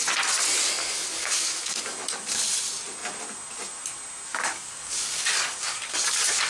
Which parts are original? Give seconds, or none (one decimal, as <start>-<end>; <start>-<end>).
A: 0.0-0.8; 2.3-4.3